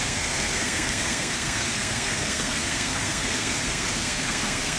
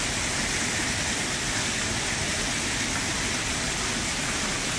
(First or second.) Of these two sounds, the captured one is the second